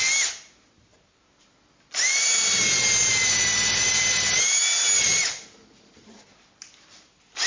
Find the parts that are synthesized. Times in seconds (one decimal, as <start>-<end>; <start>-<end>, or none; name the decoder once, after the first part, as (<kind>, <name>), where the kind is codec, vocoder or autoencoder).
none

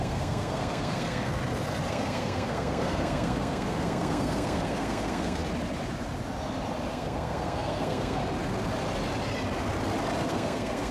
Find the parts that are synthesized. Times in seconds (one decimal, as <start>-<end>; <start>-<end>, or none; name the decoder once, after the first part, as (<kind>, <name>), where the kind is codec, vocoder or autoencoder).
0.0-1.4 (codec, SNAC); 1.9-5.4; 6.9-8.2; 10.2-10.9

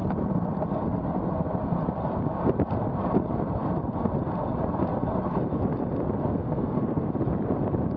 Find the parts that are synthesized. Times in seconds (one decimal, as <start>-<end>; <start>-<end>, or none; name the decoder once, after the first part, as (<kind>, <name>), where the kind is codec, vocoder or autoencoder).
6.4-7.1 (codec, SNAC)

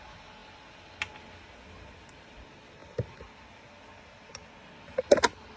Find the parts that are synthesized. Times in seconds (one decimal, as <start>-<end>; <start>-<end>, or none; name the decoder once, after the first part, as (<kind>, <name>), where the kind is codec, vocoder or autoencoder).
none

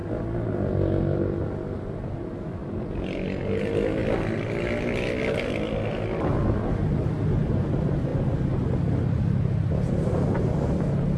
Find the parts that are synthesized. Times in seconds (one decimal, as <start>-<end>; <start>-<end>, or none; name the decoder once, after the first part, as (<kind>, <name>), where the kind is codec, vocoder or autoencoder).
none